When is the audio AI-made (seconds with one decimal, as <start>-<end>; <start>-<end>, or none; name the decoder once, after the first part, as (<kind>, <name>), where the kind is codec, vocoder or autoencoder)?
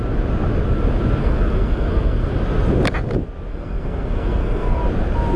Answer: 1.2-2.3 (codec, SNAC); 3.5-4.8